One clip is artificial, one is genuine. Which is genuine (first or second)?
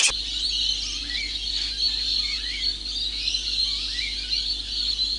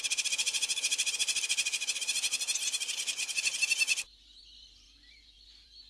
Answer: first